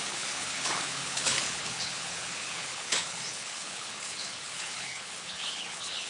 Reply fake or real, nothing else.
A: fake